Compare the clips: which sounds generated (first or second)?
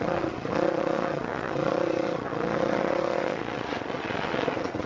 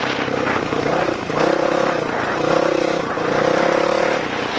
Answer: first